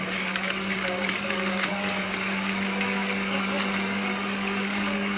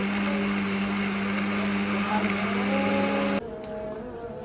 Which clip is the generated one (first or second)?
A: first